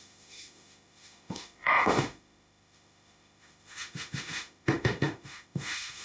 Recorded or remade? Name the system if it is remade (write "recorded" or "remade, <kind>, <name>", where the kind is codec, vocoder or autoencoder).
remade, autoencoder, DAC-VAE